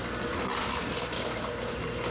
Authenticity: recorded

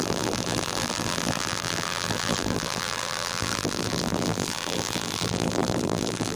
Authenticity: remade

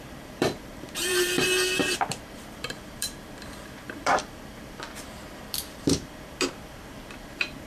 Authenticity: remade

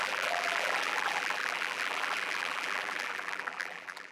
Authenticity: remade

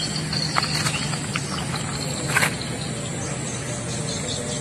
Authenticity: recorded